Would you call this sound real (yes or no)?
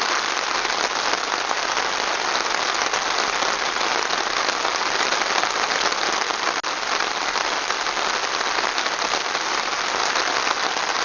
yes